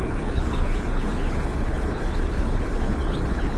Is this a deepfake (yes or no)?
yes